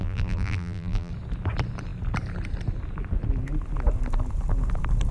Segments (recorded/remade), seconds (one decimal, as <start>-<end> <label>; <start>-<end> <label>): 0.0-1.1 remade; 1.1-5.1 recorded